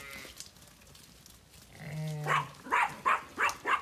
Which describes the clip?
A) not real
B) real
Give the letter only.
B